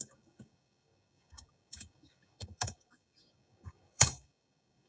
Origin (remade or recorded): remade